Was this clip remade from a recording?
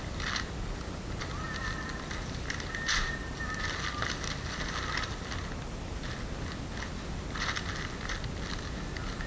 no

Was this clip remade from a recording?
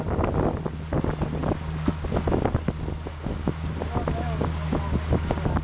no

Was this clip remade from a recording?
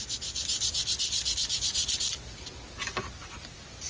no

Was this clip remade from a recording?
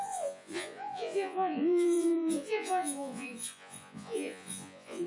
yes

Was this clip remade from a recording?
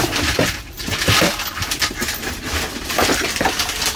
no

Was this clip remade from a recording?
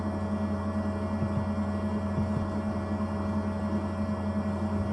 no